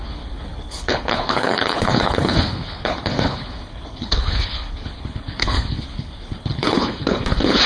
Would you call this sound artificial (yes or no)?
yes